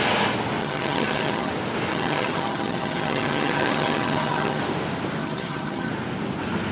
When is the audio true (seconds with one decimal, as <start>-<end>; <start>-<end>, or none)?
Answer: 0.0-0.6; 1.5-1.9; 4.6-5.2; 5.9-6.7